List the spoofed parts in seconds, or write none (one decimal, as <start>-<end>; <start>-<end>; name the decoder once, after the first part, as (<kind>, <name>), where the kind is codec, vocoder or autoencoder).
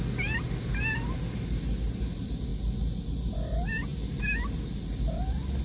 none